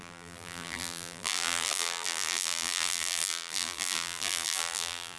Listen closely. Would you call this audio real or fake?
fake